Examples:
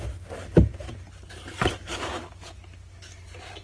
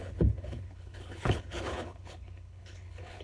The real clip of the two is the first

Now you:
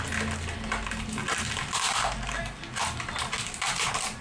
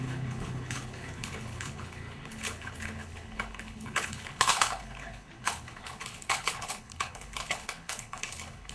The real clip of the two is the first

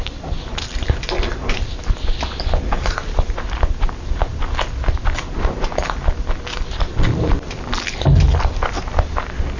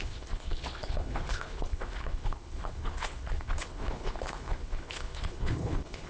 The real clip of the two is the first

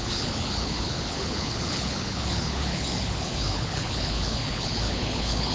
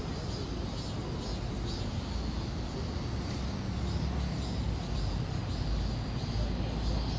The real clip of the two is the second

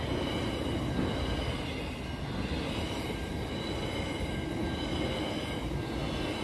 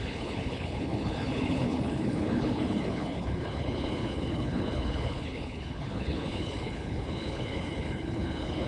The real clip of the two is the first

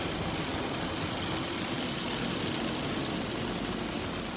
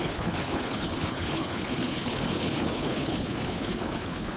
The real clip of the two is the first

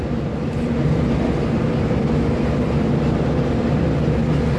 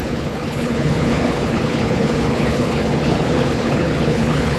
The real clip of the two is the first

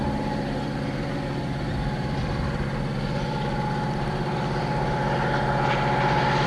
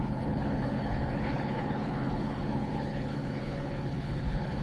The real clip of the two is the first